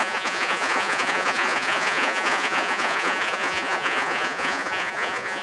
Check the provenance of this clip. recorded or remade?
remade